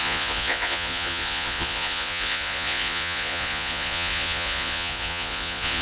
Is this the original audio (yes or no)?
no